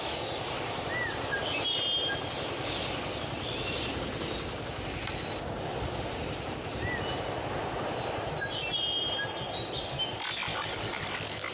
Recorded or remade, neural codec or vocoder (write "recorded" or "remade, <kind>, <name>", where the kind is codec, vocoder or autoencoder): recorded